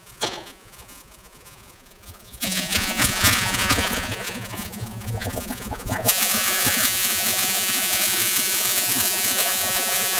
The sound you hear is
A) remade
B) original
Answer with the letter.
A